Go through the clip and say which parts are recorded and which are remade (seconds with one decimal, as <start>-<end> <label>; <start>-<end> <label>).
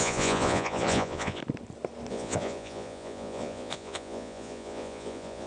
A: 0.0-1.4 remade; 1.4-2.1 recorded; 2.1-5.5 remade